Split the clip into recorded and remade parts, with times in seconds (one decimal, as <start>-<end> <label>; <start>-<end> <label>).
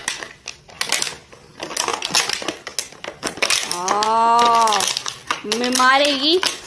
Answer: 0.0-6.7 recorded